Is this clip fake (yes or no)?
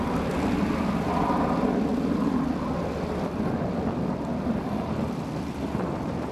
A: no